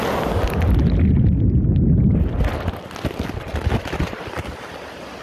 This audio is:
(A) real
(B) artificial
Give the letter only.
A